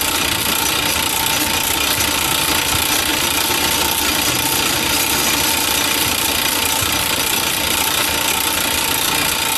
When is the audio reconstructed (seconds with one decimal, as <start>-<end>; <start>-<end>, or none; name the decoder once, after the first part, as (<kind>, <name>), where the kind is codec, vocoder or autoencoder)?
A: 3.1-8.3 (vocoder, BigVGAN v2)